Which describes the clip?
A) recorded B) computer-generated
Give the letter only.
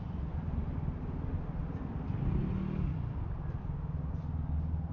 A